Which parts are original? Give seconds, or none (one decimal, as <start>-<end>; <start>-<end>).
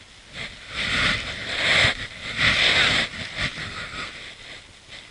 0.0-3.6; 4.1-5.1